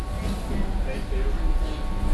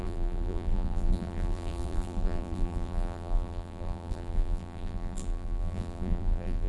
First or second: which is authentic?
first